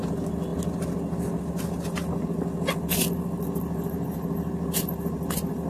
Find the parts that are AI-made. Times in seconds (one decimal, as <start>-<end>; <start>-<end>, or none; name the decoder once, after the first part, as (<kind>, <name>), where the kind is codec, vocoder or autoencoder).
none